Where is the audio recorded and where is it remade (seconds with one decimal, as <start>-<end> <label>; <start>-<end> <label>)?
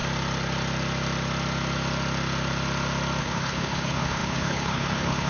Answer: 0.0-3.2 recorded; 3.2-5.3 remade